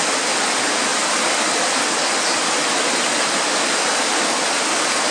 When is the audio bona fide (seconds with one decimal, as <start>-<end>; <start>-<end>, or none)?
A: 0.0-5.1